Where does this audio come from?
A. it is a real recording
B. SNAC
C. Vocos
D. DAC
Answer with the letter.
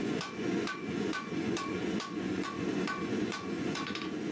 C